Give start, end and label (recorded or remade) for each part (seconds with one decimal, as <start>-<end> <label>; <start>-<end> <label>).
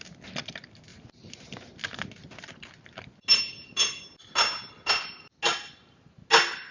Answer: 0.0-6.7 recorded